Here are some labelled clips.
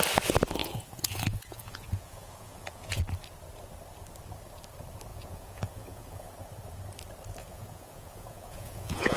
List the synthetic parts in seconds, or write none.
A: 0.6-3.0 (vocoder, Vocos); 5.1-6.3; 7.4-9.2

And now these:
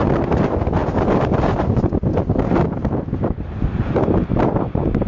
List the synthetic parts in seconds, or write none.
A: 0.8-3.9 (vocoder, BigVGAN v2)

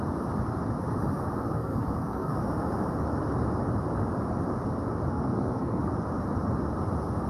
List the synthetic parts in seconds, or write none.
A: 1.6-2.4 (codec, SNAC); 5.1-5.8

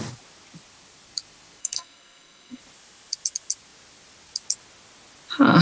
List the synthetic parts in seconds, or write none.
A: 1.6-2.6 (codec, SNAC)

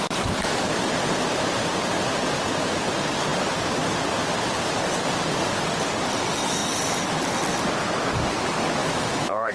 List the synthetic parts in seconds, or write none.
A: 8.8-9.5 (autoencoder, DAC-VAE)